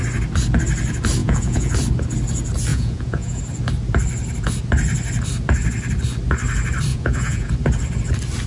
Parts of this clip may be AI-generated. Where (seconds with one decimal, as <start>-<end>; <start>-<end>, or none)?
1.2-1.7; 2.7-3.4; 6.9-7.5